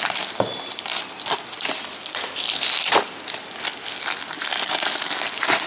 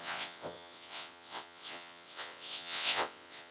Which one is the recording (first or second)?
first